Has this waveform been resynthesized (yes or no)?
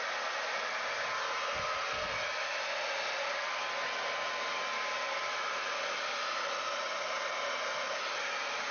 no